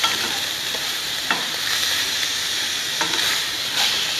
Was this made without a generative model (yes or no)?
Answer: no